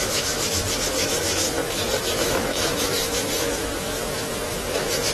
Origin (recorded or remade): remade